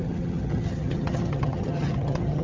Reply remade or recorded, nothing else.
remade